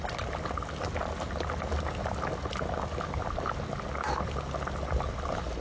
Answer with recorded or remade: recorded